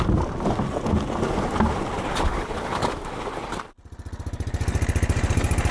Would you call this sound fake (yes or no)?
no